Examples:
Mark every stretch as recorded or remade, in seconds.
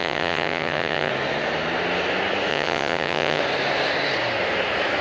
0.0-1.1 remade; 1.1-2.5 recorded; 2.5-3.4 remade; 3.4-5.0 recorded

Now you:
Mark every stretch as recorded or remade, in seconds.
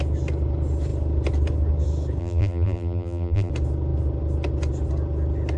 0.0-2.2 recorded; 2.2-3.5 remade; 3.5-5.6 recorded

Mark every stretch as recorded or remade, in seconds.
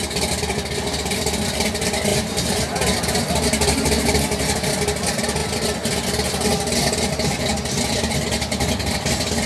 0.0-2.1 recorded; 2.1-2.6 remade; 2.6-9.5 recorded